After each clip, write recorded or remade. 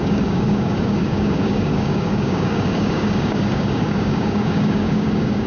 remade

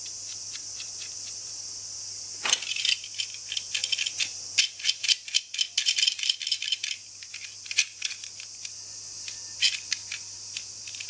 recorded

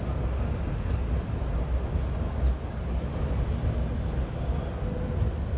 recorded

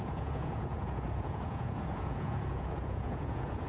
remade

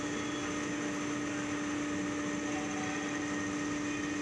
recorded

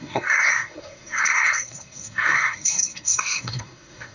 remade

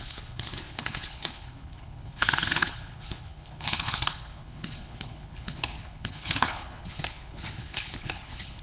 remade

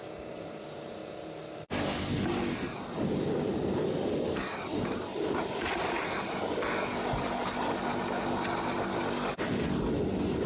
recorded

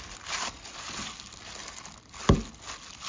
recorded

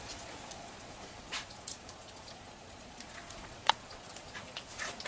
remade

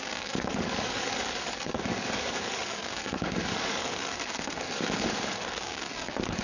remade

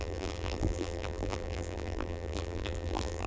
remade